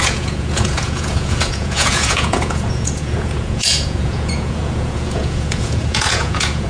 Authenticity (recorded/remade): remade